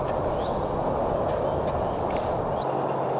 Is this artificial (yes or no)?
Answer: no